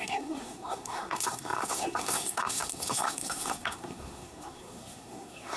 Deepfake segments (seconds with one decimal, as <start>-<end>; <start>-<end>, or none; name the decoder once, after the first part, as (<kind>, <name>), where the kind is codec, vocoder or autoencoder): 0.0-5.6 (codec, SNAC)